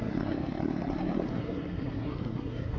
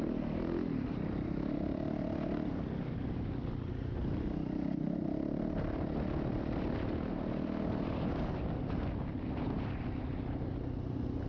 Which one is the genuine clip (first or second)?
second